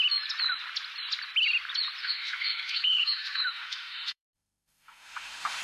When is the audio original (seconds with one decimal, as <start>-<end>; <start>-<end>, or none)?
0.0-2.0